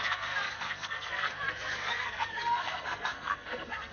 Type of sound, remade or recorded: remade